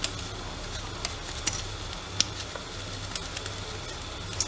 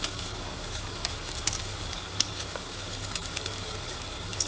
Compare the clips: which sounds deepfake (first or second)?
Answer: second